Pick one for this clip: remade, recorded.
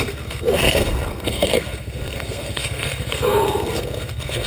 remade